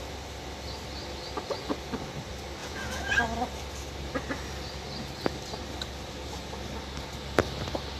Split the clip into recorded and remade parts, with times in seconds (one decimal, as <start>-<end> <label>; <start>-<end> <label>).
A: 0.0-2.6 recorded; 2.6-3.2 remade; 3.2-8.0 recorded